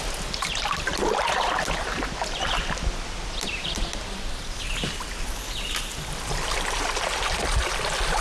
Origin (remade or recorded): recorded